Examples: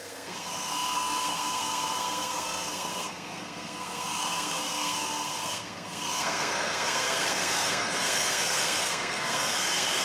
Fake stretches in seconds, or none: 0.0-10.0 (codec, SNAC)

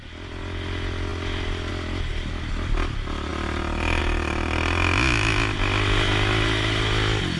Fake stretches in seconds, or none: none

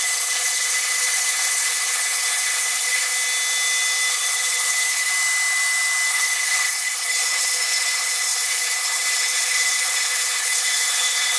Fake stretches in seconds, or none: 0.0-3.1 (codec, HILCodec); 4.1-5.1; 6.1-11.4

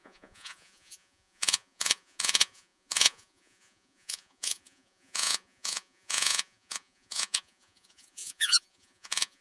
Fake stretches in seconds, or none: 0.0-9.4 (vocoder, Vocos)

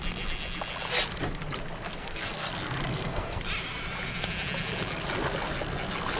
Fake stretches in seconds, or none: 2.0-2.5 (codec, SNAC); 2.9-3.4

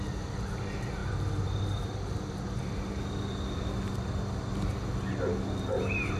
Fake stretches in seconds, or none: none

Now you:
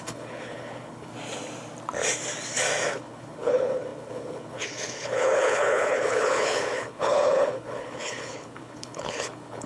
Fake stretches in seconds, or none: 0.0-1.1 (codec, HILCodec); 2.9-9.7